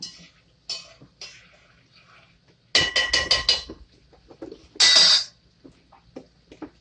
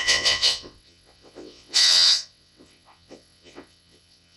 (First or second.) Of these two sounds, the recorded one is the first